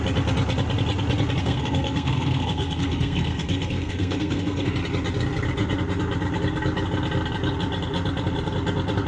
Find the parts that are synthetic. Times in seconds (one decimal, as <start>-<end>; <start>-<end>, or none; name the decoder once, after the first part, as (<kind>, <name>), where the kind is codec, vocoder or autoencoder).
1.4-4.7 (codec, SNAC)